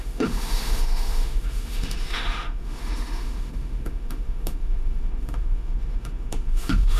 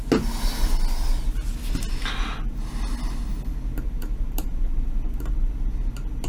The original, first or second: second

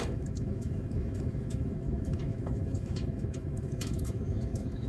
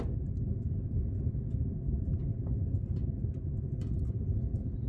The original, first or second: second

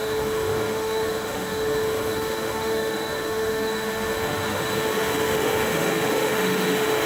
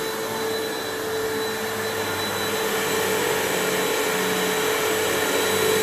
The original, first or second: second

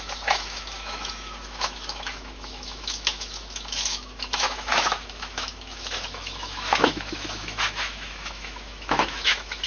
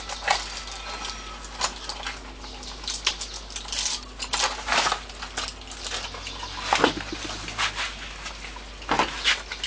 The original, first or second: second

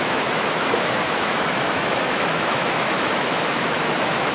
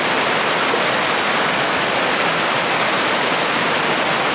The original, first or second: second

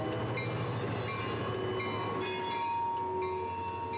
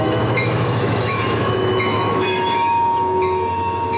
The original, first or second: first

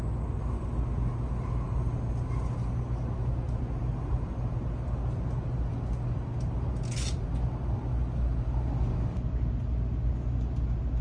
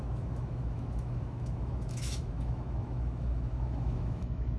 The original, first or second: first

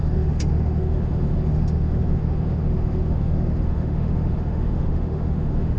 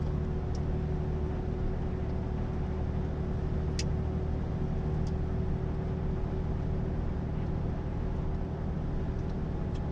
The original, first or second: second